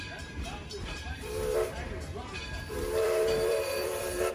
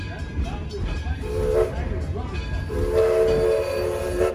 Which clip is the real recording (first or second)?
second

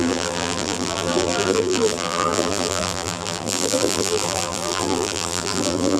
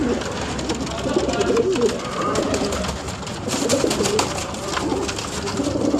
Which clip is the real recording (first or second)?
second